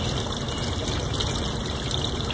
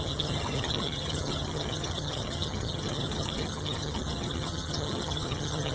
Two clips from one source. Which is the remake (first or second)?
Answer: second